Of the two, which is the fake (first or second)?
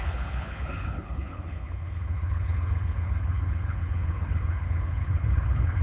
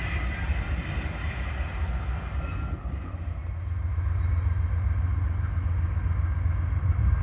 first